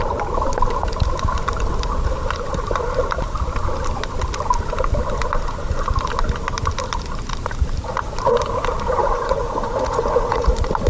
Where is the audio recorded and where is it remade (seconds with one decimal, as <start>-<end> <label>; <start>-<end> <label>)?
0.0-9.0 recorded; 9.0-10.5 remade; 10.5-10.9 recorded